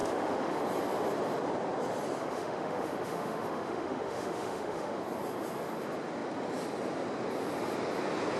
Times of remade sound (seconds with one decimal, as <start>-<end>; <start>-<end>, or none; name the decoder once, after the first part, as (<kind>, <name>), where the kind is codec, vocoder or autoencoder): 0.0-0.6 (autoencoder, DAC-VAE); 2.2-5.0